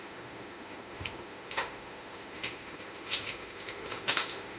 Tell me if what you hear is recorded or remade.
remade